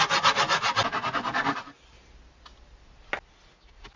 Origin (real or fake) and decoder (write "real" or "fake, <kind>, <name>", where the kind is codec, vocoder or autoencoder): real